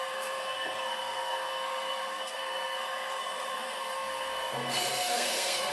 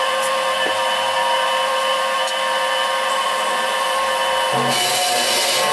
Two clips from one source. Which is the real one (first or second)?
second